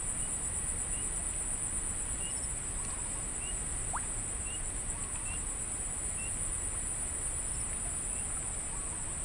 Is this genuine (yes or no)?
yes